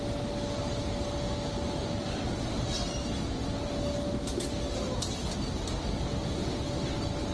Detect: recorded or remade recorded